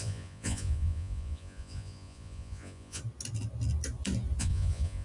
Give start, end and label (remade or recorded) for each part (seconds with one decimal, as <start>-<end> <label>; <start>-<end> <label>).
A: 0.0-3.0 remade; 3.0-4.4 recorded; 4.4-5.0 remade